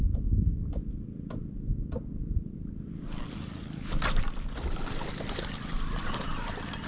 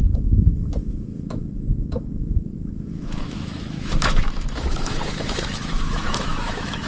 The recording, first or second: first